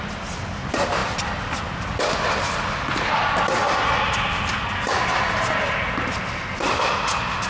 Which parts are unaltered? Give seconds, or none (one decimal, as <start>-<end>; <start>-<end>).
0.0-7.5